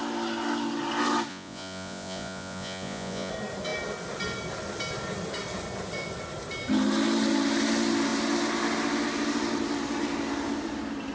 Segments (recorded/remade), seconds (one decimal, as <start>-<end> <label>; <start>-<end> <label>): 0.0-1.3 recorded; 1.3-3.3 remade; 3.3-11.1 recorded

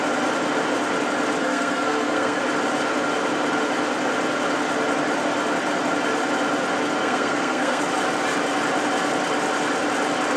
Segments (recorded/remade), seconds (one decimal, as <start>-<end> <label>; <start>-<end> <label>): 0.0-1.4 recorded; 1.4-2.4 remade; 2.4-7.0 recorded; 7.0-7.8 remade; 7.8-10.4 recorded

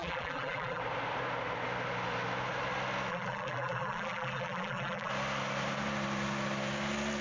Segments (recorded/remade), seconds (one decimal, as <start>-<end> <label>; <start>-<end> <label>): 0.0-0.8 remade; 0.8-3.1 recorded; 3.1-5.1 remade; 5.1-7.2 recorded